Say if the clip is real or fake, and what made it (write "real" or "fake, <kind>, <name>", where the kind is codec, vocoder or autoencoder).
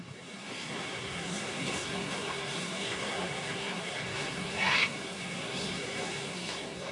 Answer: fake, codec, SNAC